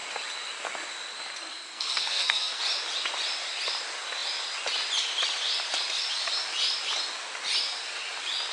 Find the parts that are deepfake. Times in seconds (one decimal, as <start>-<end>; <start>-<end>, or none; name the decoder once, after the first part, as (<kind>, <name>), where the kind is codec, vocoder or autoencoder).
1.5-2.6 (codec, SNAC)